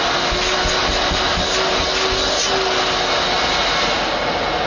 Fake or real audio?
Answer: real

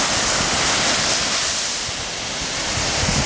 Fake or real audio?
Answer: real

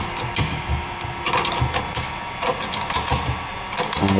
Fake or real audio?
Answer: real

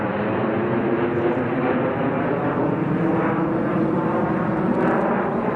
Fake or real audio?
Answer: real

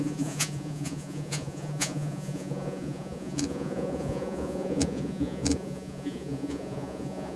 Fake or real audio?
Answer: fake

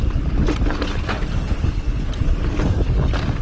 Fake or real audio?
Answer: real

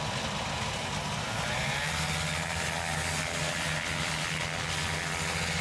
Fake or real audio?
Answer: real